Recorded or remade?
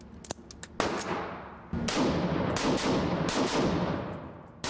recorded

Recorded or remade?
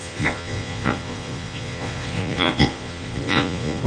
remade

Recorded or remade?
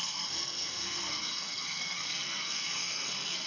remade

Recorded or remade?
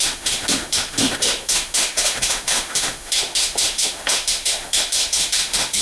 remade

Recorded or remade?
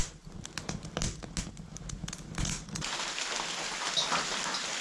recorded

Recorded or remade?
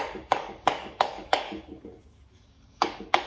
remade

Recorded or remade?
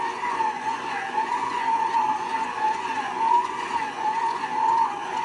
remade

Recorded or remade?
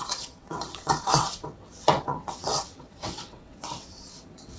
remade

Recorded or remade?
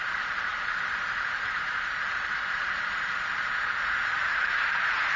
remade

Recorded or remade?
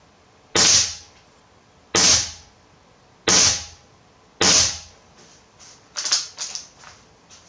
recorded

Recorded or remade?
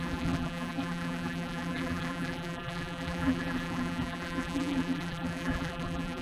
remade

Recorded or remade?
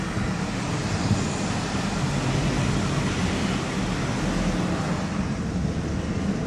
recorded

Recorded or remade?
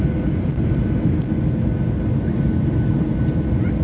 recorded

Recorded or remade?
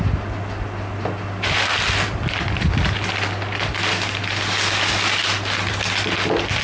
recorded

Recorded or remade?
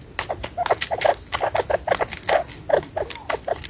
recorded